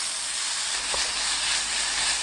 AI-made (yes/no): no